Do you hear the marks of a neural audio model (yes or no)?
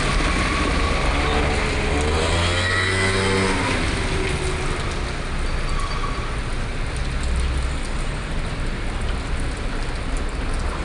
no